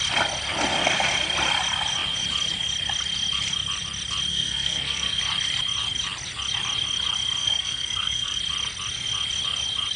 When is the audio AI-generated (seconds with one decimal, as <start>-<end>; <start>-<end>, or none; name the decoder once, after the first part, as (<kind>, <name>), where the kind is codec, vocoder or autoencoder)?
4.3-5.2 (codec, SNAC); 7.4-8.4